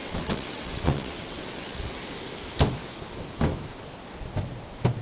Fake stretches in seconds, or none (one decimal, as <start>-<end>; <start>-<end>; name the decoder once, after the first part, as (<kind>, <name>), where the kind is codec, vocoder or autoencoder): 0.0-2.0 (vocoder, WaveNeXt)

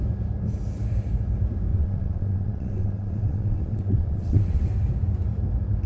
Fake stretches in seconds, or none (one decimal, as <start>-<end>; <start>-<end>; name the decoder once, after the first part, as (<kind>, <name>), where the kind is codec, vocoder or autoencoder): 1.7-4.7 (vocoder, WaveNeXt)

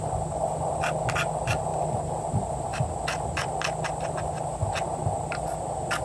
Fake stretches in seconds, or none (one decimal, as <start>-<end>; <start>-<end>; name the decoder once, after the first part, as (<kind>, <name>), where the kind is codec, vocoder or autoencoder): none

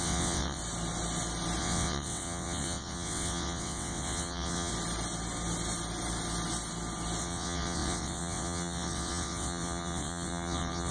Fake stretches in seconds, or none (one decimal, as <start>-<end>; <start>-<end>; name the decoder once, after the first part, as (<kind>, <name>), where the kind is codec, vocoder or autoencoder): 0.0-0.6 (vocoder, WaveNeXt); 1.6-4.7; 7.2-10.9

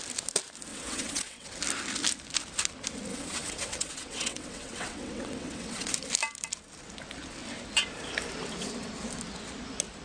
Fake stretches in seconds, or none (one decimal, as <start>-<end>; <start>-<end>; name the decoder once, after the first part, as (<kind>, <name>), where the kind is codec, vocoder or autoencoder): 0.7-1.5 (vocoder, WaveNeXt); 3.1-5.9

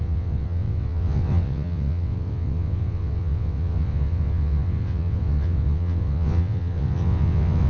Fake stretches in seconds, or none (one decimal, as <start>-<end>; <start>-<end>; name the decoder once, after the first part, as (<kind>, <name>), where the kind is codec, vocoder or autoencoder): 0.0-7.7 (vocoder, WaveNeXt)

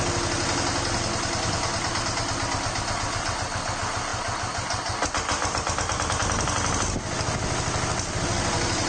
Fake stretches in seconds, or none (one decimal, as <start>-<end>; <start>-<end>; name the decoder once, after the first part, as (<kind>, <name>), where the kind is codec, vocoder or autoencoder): none

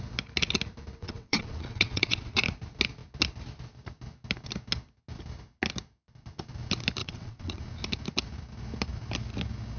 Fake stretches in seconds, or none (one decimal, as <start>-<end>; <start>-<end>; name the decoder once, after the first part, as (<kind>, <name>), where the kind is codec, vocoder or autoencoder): 1.0-2.4 (vocoder, WaveNeXt); 7.0-7.6